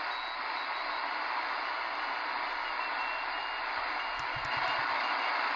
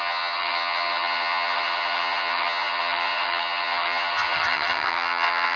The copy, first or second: second